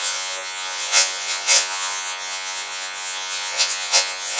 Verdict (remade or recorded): remade